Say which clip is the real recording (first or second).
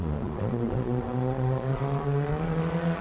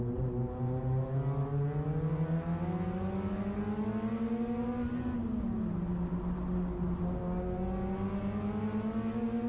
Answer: second